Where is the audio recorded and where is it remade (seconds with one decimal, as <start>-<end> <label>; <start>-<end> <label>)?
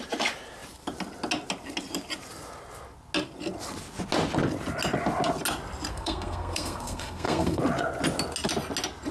0.0-5.9 recorded; 5.9-7.6 remade; 7.6-9.1 recorded